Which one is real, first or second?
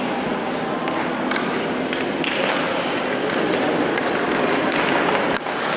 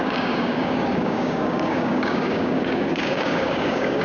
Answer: first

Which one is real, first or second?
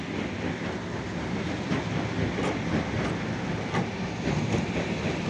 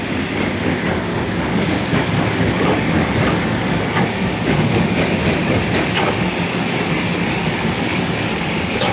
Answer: first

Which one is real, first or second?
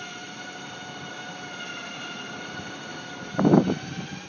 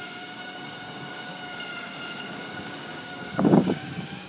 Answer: first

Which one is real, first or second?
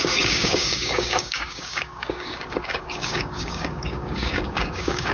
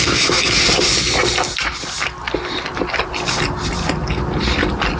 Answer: second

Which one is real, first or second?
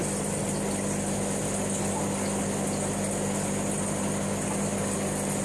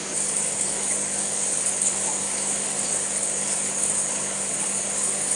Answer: first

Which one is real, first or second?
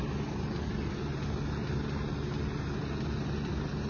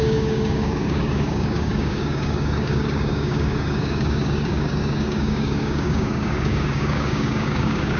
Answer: first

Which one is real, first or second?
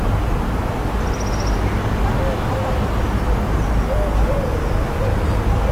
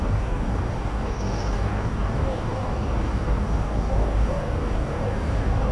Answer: first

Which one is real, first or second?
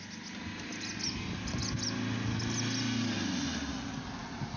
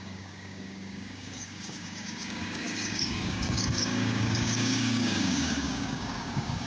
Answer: first